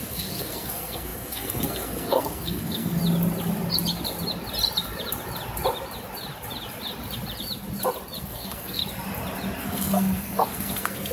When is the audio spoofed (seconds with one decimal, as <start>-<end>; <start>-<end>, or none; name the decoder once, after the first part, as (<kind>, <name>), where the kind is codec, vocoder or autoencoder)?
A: 0.0-3.0 (codec, SNAC); 8.2-8.8; 9.6-11.1